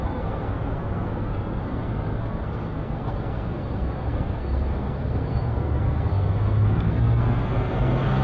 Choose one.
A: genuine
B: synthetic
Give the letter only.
B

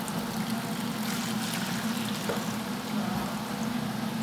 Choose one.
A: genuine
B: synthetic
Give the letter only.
A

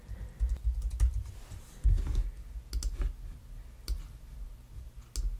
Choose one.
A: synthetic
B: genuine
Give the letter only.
B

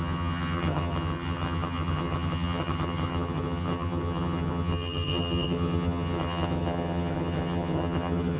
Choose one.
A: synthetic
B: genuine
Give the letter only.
A